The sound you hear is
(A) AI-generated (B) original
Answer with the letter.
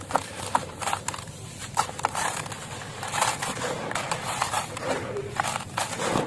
A